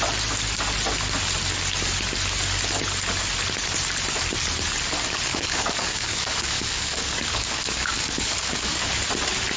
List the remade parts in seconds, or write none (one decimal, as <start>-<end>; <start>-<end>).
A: 5.3-8.9